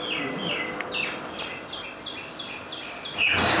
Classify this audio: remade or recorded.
recorded